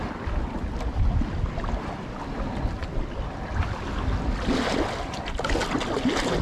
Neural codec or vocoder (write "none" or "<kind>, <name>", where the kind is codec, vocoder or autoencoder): none